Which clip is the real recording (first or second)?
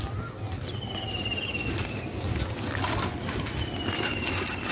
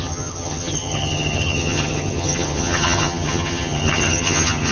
first